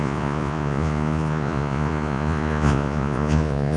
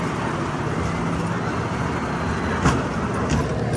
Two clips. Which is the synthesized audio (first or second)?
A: first